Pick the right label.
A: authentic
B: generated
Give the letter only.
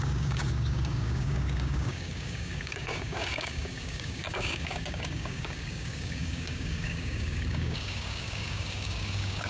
B